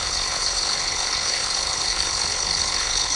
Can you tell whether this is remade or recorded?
remade